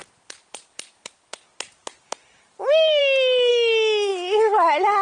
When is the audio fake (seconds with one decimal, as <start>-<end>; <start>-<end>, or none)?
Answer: 3.5-4.1